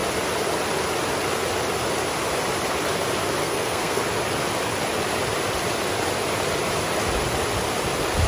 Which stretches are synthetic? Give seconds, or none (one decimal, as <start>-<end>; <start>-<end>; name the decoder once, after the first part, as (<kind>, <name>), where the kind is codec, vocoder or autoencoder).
3.4-4.0 (codec, SNAC)